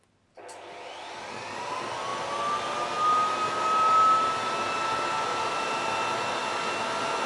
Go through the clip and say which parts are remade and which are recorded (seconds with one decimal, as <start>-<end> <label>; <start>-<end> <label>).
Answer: 0.0-7.3 recorded

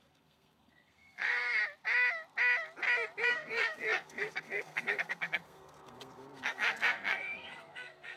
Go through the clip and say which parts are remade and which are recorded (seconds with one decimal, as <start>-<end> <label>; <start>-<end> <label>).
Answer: 0.0-1.6 remade; 1.6-3.3 recorded; 3.3-8.2 remade

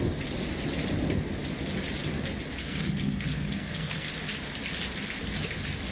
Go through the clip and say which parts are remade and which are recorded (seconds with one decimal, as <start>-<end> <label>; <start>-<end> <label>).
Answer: 0.0-2.6 recorded; 2.6-4.1 remade; 4.1-5.9 recorded

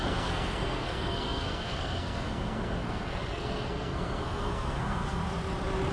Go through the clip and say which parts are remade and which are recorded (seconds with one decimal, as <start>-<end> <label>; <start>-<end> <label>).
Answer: 0.0-5.2 remade; 5.2-5.9 recorded

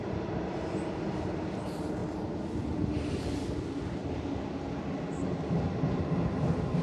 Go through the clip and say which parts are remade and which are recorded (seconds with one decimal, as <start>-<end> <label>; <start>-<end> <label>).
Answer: 0.0-6.8 recorded